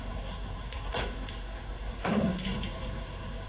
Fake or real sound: fake